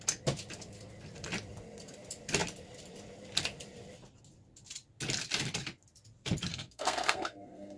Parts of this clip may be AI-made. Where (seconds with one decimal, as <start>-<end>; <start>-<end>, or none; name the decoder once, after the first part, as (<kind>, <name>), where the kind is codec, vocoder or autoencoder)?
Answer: 6.5-7.8 (codec, SNAC)